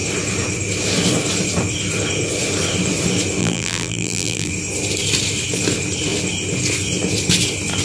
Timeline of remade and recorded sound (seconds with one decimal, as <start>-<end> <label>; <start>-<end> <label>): 0.0-3.4 recorded; 3.4-4.5 remade; 4.5-7.8 recorded